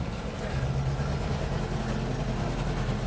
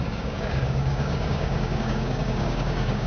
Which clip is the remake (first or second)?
second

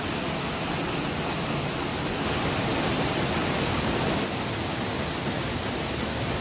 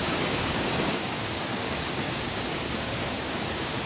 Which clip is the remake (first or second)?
second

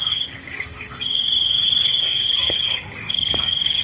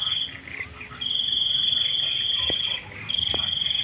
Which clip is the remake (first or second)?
first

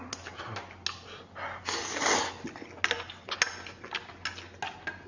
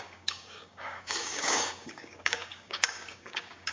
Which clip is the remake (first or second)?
second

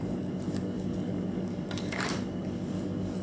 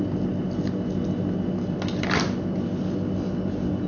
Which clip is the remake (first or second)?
first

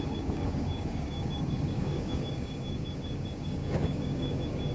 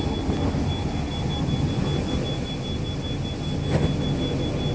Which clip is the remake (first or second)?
first